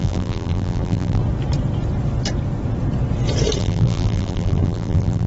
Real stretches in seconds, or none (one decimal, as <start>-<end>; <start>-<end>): 1.2-3.6